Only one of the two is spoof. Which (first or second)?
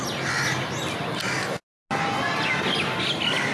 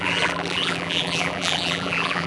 second